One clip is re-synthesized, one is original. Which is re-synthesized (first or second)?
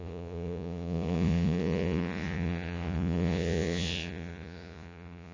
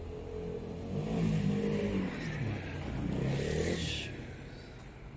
first